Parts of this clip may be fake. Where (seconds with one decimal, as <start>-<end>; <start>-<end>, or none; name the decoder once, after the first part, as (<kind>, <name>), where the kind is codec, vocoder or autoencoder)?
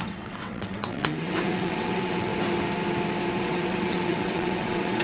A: 0.0-2.3 (vocoder, WaveNeXt); 3.3-5.0